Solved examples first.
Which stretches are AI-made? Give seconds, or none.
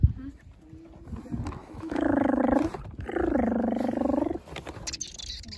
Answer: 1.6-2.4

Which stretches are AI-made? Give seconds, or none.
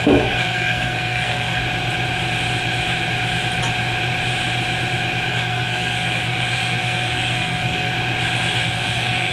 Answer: 0.0-1.6; 5.3-7.9; 8.6-9.3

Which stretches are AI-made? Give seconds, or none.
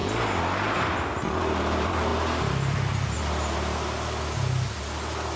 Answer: none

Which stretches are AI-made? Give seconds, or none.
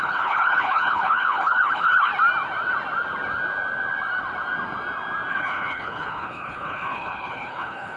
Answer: 0.0-2.1; 5.3-8.0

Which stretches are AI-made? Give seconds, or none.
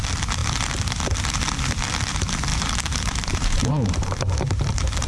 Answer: 2.5-5.1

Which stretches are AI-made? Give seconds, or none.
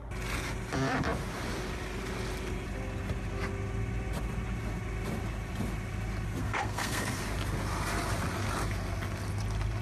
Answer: 6.4-7.2